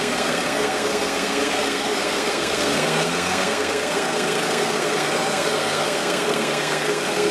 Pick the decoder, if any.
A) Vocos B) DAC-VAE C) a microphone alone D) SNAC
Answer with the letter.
D